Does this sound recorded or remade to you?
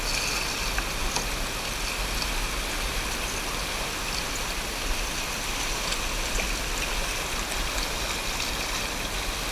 recorded